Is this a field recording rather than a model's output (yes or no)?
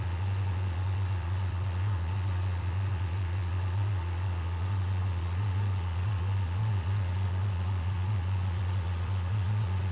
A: no